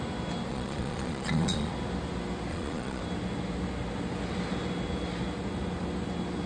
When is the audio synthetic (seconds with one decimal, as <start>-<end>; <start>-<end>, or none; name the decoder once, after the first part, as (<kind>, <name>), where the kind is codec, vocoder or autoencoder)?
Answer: 0.5-1.7 (vocoder, Vocos); 2.5-3.0